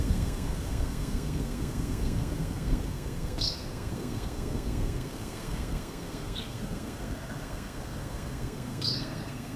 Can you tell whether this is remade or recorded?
remade